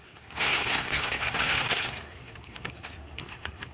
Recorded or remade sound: remade